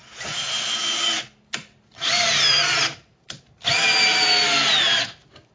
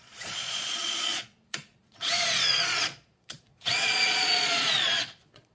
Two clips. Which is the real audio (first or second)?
first